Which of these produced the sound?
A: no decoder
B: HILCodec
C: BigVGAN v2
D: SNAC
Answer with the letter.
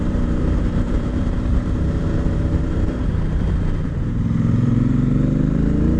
C